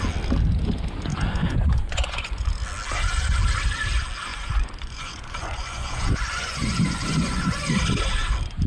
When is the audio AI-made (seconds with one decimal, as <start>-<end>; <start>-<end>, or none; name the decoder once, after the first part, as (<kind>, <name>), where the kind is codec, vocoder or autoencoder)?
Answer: 1.1-2.5 (vocoder, Vocos); 4.3-7.7